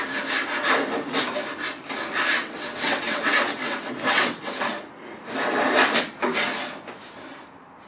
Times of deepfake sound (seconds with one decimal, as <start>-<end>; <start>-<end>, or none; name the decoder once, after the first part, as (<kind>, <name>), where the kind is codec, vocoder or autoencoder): 2.3-4.7 (vocoder, WaveNeXt)